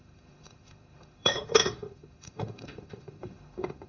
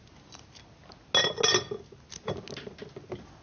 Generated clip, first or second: first